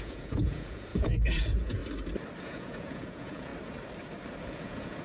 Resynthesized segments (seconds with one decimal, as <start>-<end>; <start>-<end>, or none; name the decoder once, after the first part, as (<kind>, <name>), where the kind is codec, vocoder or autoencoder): 0.0-1.8 (vocoder, Vocos); 2.4-3.5; 4.4-5.0